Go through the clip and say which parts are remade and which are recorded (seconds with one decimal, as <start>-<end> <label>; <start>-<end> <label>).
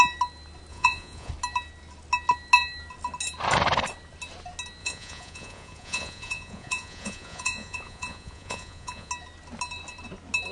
0.0-0.7 recorded; 0.7-1.3 remade; 1.3-4.8 recorded; 4.8-9.1 remade; 9.1-10.5 recorded